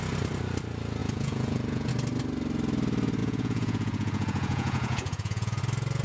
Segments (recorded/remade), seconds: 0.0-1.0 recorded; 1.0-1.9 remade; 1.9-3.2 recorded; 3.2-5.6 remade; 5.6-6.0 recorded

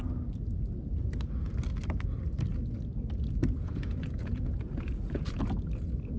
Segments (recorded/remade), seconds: 0.0-3.6 recorded; 3.6-5.4 remade; 5.4-6.2 recorded

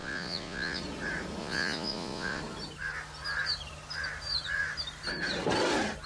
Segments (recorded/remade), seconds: 0.0-0.8 remade; 0.8-1.4 recorded; 1.4-2.4 remade; 2.4-6.1 recorded